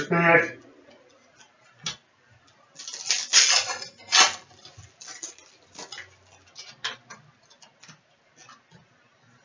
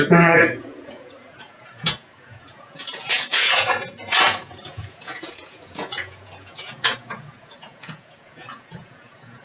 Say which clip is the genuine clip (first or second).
first